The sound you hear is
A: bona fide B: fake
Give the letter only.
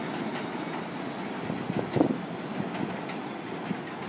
A